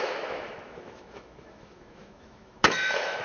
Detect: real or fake fake